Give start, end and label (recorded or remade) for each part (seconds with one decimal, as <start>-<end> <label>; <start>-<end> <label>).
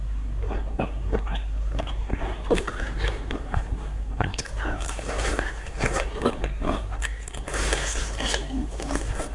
0.0-9.3 remade